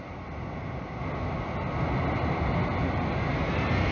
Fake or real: real